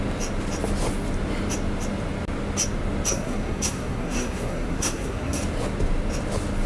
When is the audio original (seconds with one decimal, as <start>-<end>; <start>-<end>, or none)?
0.0-3.1; 5.4-6.7